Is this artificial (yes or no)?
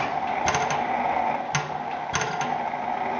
no